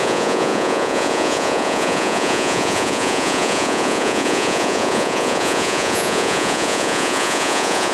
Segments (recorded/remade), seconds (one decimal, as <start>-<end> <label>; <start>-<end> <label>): 0.0-7.9 remade